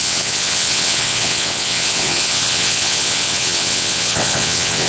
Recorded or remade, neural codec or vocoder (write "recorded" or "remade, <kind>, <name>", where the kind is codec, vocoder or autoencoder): remade, vocoder, WaveNeXt